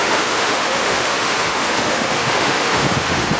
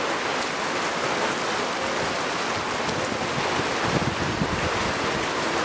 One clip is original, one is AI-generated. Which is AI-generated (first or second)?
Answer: first